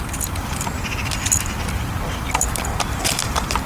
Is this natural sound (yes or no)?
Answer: yes